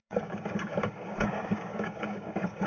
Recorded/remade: remade